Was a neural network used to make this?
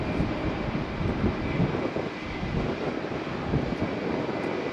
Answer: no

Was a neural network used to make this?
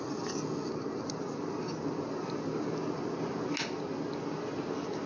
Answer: no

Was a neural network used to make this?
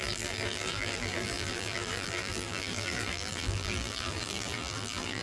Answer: yes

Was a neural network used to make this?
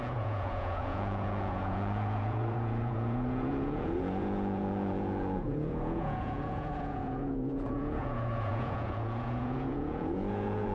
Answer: yes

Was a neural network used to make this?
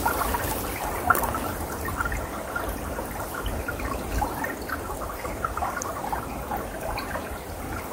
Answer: no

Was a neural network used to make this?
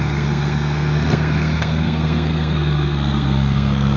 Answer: yes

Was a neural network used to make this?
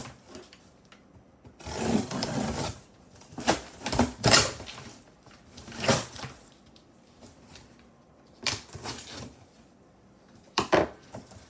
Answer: yes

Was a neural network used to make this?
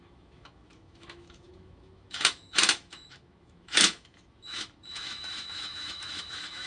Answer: yes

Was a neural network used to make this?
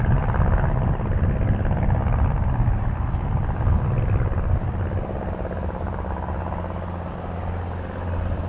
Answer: no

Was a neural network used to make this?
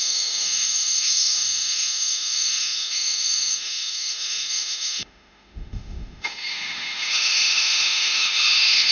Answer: yes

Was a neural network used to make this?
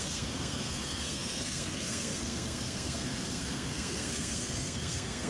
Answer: yes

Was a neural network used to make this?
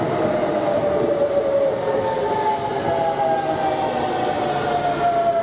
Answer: no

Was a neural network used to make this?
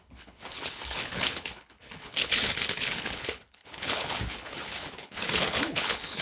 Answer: yes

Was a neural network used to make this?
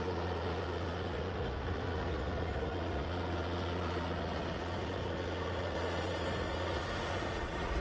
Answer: yes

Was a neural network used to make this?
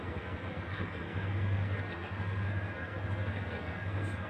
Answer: yes